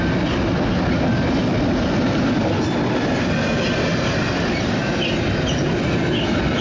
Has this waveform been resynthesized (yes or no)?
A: no